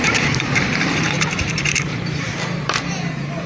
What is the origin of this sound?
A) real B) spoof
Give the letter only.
B